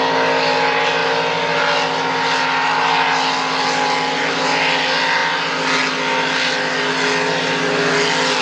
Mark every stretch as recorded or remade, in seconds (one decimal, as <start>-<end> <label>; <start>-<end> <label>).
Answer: 0.0-8.4 recorded